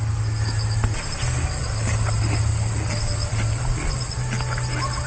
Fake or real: real